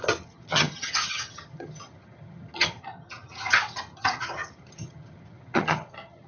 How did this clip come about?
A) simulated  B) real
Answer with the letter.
A